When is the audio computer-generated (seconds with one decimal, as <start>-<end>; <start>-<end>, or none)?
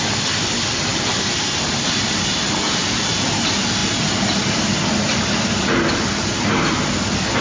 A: none